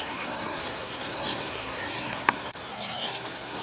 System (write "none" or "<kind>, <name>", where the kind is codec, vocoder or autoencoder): codec, SNAC